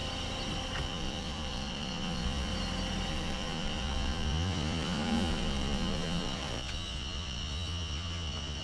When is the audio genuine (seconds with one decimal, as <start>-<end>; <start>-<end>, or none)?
0.0-0.8; 2.5-3.1